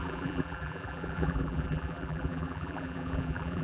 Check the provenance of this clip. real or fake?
fake